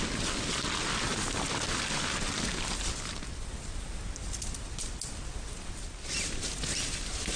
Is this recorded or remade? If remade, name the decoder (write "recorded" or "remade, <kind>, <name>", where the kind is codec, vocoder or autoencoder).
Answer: recorded